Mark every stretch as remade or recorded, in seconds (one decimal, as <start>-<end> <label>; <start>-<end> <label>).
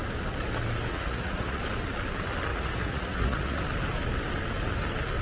0.0-0.9 recorded; 0.9-1.6 remade; 1.6-2.5 recorded; 2.5-3.6 remade; 3.6-5.2 recorded